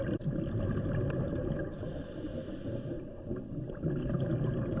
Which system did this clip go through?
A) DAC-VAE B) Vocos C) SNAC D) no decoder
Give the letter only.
D